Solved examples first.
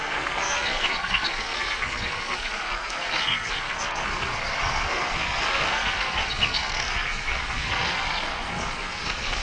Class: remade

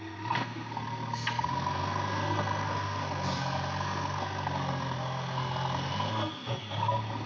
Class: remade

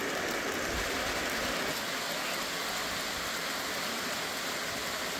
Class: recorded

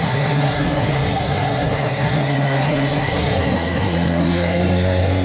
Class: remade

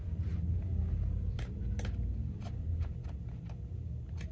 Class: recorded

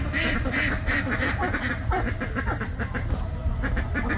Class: recorded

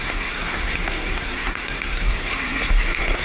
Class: remade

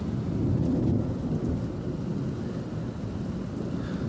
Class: recorded